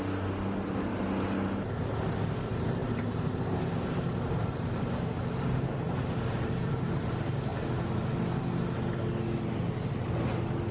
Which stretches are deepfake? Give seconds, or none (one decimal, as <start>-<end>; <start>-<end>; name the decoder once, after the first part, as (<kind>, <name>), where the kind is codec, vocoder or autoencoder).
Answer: 2.8-6.9 (vocoder, BigVGAN v2)